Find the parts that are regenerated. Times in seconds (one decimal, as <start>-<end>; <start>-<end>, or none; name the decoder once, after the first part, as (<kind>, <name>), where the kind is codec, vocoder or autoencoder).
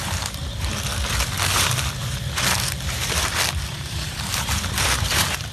0.0-0.4 (vocoder, BigVGAN v2); 3.7-5.5